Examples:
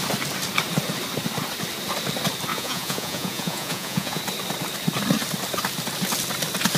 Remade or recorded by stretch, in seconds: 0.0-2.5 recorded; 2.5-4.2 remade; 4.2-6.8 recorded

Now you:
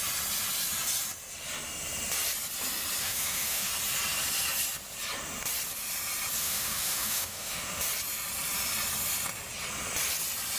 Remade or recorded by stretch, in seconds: 0.0-3.0 recorded; 3.0-3.7 remade; 3.7-6.4 recorded; 6.4-7.8 remade; 7.8-10.6 recorded

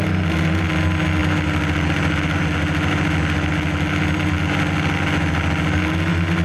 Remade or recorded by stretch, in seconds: 0.0-6.4 recorded

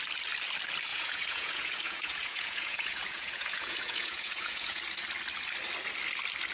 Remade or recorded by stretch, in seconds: 0.0-0.9 recorded; 0.9-4.8 remade; 4.8-6.5 recorded